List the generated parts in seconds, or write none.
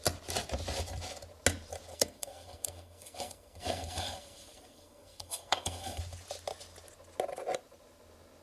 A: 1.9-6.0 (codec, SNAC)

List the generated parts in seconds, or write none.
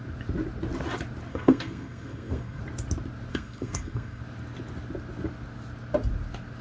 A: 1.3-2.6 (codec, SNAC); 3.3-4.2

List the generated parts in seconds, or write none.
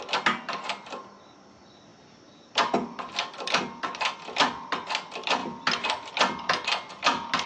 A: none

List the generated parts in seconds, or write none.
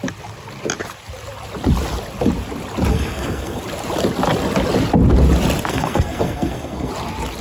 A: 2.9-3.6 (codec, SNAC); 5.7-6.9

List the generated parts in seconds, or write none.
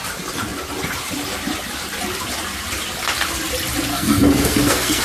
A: 3.9-5.0 (codec, SNAC)